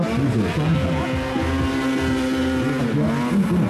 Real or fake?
real